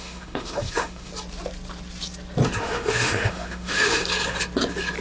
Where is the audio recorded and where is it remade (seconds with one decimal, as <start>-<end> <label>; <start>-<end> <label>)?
0.0-1.1 remade; 1.1-2.6 recorded; 2.6-4.0 remade; 4.0-5.0 recorded